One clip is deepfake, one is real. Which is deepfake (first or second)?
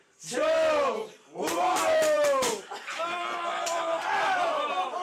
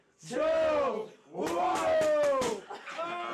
first